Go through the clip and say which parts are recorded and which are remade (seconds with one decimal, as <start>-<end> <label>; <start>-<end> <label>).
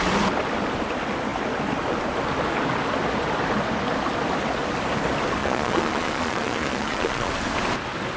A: 0.0-5.4 recorded; 5.4-7.3 remade; 7.3-8.2 recorded